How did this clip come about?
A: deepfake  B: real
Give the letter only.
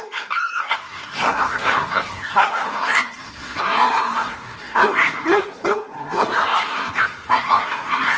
A